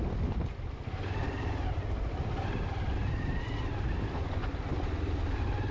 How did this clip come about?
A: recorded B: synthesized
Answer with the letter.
A